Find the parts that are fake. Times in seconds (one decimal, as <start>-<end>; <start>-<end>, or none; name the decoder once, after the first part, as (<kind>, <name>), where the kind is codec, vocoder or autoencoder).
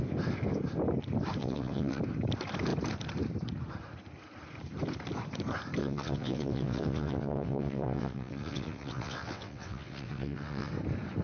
1.4-2.0 (vocoder, WaveNeXt); 5.8-10.7